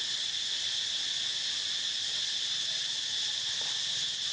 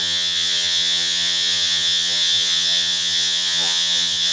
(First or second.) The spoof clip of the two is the second